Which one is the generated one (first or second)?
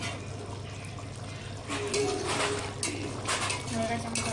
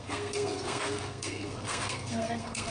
second